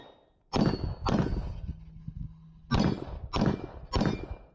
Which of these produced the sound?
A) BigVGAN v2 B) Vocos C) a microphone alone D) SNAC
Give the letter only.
C